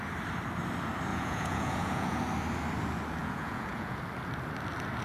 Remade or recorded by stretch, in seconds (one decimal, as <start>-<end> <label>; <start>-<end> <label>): 0.0-1.1 recorded; 1.1-2.2 remade; 2.2-3.2 recorded; 3.2-4.0 remade; 4.0-5.0 recorded

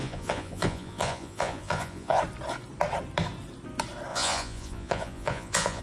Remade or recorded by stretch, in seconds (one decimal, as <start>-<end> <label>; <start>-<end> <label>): 0.0-2.2 remade; 2.2-4.1 recorded; 4.1-5.8 remade